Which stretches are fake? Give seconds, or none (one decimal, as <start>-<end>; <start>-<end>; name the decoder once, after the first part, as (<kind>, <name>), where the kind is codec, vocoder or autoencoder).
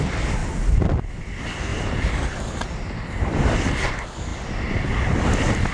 1.7-3.7 (vocoder, BigVGAN v2)